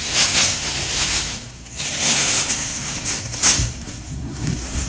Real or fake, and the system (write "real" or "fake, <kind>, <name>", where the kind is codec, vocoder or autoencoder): fake, codec, SNAC